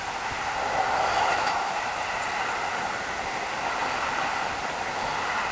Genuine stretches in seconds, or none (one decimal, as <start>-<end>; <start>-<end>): 0.0-1.1; 1.8-5.5